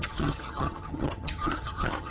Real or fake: fake